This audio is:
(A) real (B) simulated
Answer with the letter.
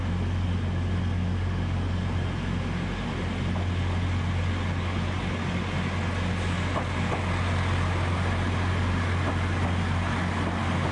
A